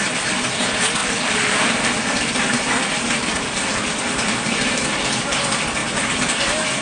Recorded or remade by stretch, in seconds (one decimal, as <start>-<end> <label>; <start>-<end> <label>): 0.0-1.0 recorded; 1.0-5.1 remade; 5.1-6.8 recorded